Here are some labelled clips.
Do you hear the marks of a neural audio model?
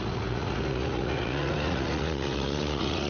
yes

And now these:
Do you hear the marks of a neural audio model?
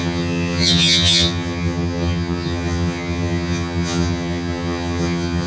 yes